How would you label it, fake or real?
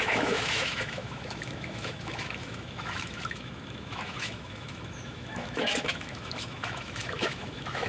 fake